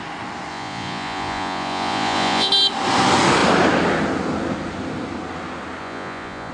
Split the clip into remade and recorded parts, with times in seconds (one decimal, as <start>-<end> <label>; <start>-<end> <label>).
0.0-0.5 recorded; 0.5-2.5 remade; 2.5-5.8 recorded; 5.8-6.5 remade